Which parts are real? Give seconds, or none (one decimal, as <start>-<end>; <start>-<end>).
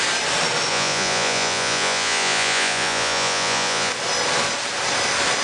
0.0-0.7; 3.9-5.4